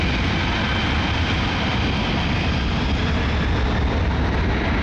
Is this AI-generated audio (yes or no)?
no